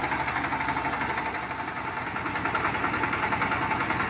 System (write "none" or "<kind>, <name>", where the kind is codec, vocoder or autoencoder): none